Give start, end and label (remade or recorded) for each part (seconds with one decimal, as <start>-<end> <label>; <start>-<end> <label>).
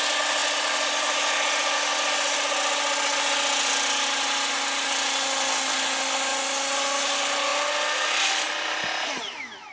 0.0-9.7 recorded